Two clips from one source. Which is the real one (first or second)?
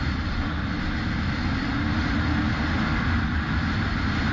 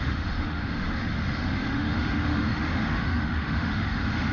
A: first